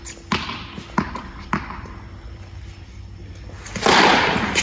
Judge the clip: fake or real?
real